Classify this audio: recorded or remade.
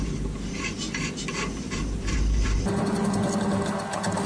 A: recorded